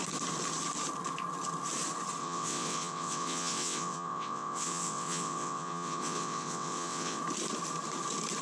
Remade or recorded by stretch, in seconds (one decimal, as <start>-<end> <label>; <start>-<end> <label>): 0.0-2.2 recorded; 2.2-7.2 remade; 7.2-8.4 recorded